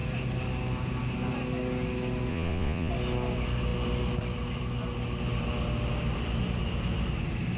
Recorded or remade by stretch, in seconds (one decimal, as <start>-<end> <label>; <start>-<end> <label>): 0.0-2.3 recorded; 2.3-2.9 remade; 2.9-7.6 recorded